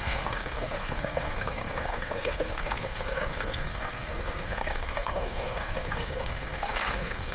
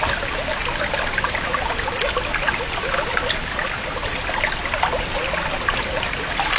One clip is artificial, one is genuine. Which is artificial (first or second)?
first